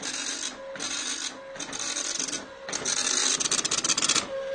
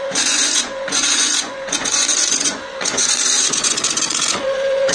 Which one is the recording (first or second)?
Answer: first